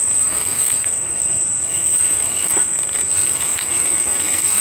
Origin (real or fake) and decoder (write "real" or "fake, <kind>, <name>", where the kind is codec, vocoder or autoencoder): fake, codec, SNAC